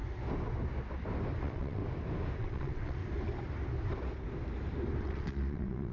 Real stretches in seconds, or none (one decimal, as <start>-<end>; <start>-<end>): 0.0-1.4; 1.8-2.4; 3.0-5.0